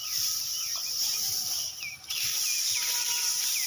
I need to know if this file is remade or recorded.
recorded